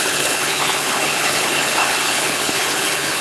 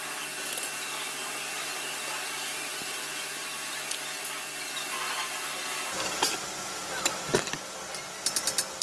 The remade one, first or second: first